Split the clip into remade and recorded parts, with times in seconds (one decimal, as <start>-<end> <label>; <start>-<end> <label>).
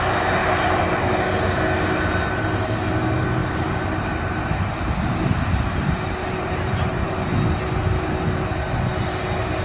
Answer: 0.0-0.4 recorded; 0.4-1.1 remade; 1.1-3.4 recorded; 3.4-7.6 remade; 7.6-9.6 recorded